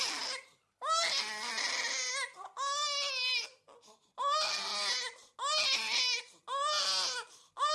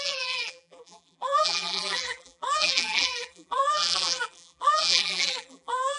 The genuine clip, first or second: first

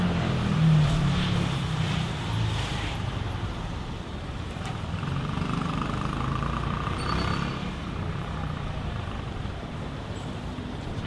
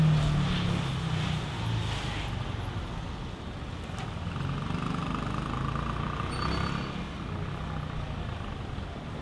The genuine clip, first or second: second